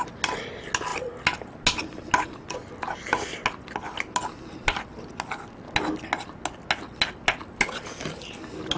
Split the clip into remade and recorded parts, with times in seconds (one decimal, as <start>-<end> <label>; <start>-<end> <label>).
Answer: 0.0-8.8 recorded